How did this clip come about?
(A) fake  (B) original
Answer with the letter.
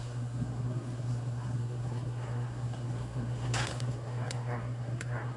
A